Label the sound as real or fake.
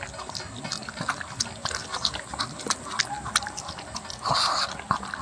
real